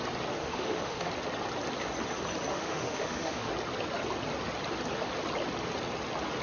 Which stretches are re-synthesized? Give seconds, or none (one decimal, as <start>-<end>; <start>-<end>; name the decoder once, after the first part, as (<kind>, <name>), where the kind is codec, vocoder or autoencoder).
0.4-1.1 (autoencoder, DAC-VAE); 2.5-3.5